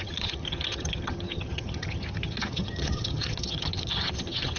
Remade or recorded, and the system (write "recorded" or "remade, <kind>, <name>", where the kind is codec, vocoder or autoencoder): remade, vocoder, HiFi-GAN